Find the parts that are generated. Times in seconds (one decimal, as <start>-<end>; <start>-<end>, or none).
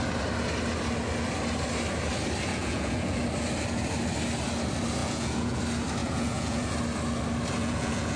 2.5-3.2; 5.0-5.6; 6.0-6.7; 7.6-8.2